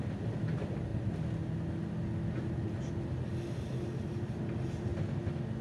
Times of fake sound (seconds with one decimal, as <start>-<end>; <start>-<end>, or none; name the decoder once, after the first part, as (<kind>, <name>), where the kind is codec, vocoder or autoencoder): none